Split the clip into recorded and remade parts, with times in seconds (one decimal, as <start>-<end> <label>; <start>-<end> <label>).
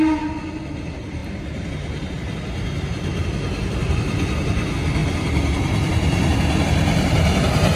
0.0-3.1 recorded; 3.1-3.8 remade; 3.8-7.8 recorded